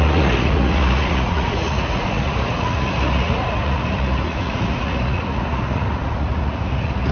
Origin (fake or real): fake